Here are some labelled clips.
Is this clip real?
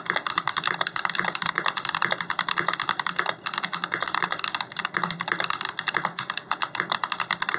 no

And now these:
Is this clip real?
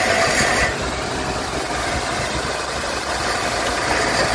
no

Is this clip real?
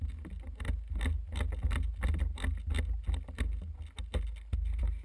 yes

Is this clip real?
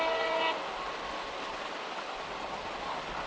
yes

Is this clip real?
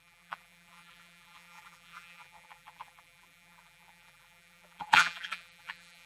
no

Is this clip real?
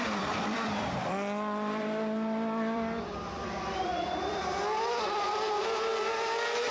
no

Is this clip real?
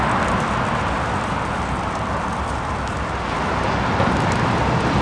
yes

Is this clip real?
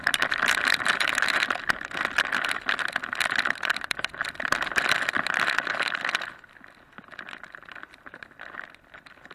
yes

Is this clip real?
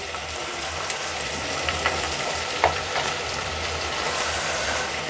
no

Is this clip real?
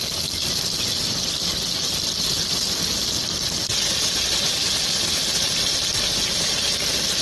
yes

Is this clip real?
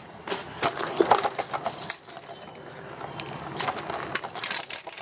no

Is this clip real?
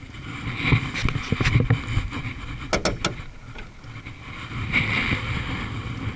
yes